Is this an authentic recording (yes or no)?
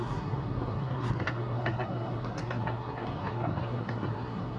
no